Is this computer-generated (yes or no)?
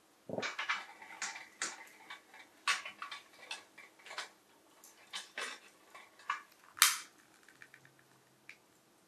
no